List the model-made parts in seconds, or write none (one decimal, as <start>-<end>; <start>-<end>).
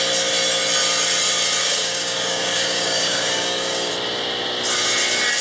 1.6-3.9